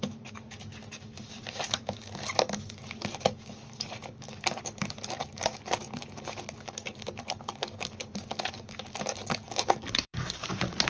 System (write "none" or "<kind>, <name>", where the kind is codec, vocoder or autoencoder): codec, DAC